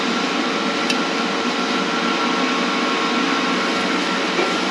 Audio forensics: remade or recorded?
recorded